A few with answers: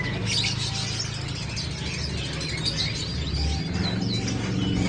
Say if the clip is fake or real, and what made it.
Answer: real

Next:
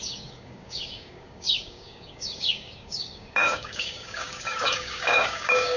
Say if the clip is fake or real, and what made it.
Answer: fake, codec, DAC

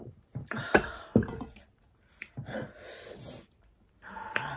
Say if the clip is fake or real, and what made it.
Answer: real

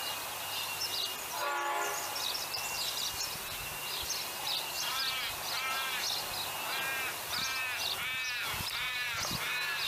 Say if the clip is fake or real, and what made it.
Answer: real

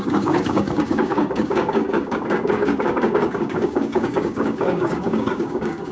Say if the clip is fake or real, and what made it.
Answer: fake, codec, DAC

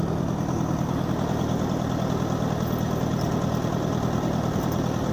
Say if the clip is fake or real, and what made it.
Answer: real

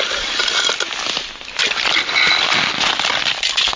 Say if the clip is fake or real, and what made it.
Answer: real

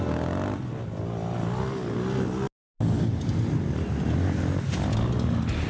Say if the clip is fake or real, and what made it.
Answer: real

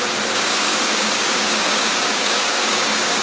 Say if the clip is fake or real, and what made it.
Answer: fake, codec, DAC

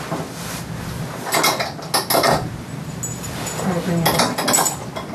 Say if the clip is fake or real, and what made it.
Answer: real